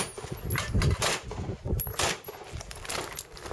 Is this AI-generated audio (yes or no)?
no